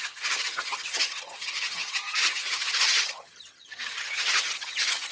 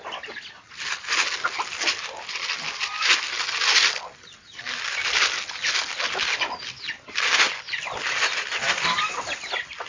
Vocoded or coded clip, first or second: first